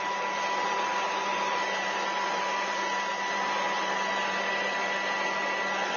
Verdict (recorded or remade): recorded